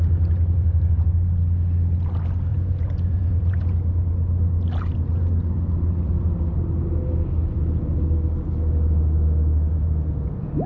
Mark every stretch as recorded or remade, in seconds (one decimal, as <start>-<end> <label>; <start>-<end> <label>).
0.0-2.5 recorded; 2.5-3.6 remade; 3.6-9.7 recorded; 9.7-10.7 remade